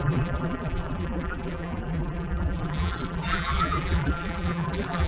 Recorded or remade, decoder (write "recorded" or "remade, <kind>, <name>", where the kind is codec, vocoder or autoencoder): remade, vocoder, BigVGAN v2